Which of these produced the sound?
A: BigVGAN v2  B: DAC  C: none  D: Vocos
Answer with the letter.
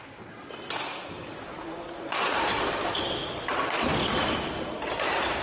C